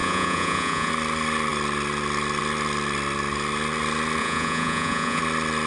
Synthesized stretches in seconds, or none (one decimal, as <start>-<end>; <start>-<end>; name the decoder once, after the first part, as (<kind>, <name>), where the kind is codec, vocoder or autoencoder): 0.0-0.9 (vocoder, Vocos); 4.2-5.2

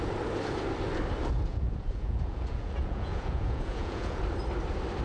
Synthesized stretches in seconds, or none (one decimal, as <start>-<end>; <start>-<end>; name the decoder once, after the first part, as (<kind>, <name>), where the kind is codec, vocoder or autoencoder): 1.5-4.2 (vocoder, Vocos)

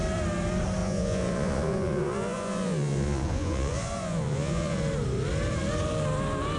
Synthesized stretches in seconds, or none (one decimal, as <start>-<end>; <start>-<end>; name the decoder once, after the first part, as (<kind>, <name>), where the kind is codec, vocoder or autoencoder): 0.8-4.8 (vocoder, Vocos)